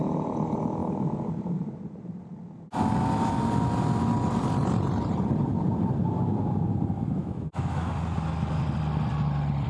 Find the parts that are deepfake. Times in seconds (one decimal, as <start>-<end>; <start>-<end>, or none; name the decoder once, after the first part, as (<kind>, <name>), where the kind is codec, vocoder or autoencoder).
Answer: 7.2-7.9 (autoencoder, DAC-VAE)